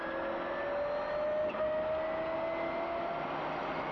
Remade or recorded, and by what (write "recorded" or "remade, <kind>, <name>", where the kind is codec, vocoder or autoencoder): recorded